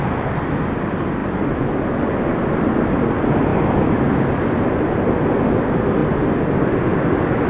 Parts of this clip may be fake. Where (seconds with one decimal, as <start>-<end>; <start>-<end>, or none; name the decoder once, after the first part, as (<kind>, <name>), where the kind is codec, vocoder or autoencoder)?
none